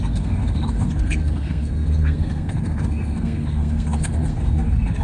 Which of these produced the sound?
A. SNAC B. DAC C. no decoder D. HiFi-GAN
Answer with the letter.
A